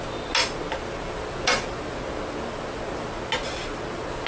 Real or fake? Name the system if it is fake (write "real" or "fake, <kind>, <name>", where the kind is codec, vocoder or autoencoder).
real